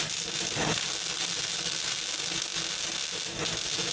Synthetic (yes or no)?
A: no